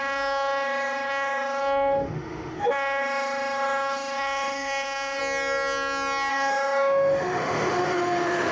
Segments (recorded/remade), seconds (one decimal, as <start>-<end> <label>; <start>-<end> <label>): 0.0-5.2 remade; 5.2-6.3 recorded; 6.3-8.5 remade